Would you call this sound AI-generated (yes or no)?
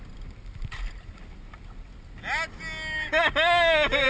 no